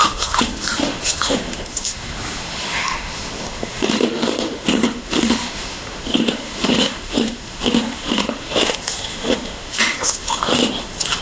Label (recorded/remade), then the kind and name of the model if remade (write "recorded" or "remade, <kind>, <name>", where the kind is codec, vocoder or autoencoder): remade, autoencoder, DAC-VAE